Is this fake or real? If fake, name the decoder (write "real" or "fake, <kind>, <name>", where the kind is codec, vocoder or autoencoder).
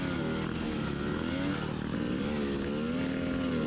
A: real